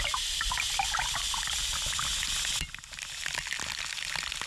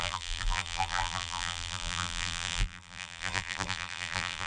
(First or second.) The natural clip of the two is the first